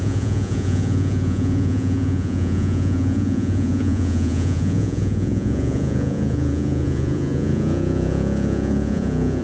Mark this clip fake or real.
fake